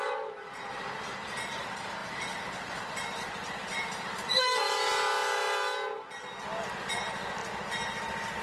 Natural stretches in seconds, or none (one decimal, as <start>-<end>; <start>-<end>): 4.9-6.8; 7.4-8.4